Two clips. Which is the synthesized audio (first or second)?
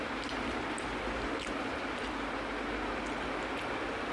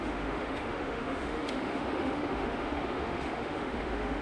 second